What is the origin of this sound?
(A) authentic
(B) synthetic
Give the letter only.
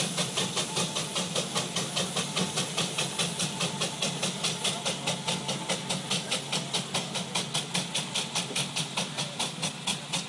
A